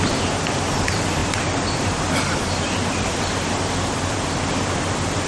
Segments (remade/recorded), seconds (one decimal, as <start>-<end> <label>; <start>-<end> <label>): 0.0-5.3 recorded